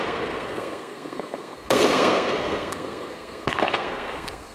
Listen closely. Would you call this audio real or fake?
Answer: fake